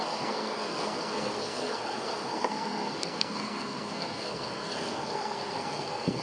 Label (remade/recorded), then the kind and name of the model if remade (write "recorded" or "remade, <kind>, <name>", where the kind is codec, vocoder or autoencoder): remade, codec, SNAC